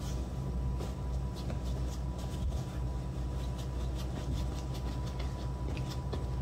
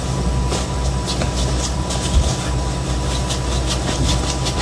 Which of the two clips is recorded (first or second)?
first